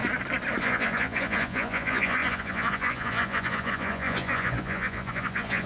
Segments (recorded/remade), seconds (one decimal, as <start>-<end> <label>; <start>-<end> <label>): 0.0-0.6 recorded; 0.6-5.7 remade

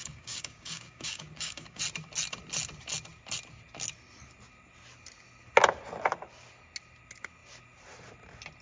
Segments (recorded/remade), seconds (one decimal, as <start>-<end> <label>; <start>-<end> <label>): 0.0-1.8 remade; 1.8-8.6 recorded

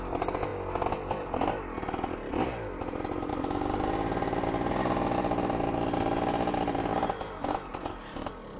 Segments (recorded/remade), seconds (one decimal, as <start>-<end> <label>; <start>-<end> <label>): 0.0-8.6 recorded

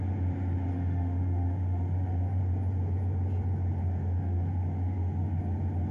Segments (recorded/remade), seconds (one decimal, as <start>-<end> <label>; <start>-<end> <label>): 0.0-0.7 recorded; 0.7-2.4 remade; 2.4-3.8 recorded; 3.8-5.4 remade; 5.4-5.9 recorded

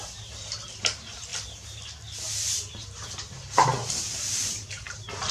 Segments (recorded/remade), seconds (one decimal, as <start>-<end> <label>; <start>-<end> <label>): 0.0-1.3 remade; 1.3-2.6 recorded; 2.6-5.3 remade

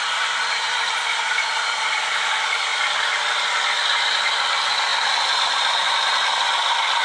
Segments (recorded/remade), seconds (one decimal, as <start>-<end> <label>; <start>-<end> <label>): 0.0-7.0 recorded

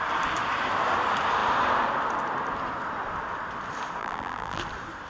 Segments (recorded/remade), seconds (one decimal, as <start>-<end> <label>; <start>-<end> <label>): 0.0-4.0 recorded; 4.0-4.6 remade; 4.6-5.1 recorded